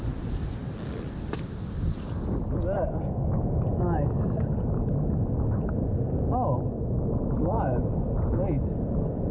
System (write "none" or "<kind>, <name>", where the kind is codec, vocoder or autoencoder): none